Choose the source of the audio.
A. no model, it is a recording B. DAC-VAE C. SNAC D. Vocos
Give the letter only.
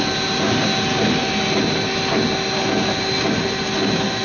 A